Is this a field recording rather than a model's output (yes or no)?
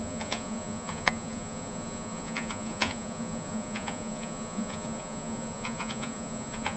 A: no